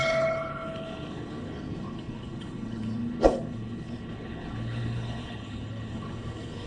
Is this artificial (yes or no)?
yes